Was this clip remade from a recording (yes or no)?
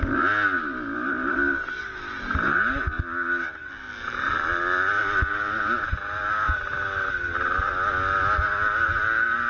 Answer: no